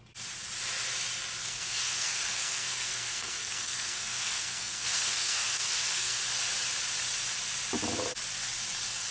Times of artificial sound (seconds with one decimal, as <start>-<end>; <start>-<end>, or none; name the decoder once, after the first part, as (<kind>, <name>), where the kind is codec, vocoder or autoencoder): 1.4-6.2 (codec, SNAC)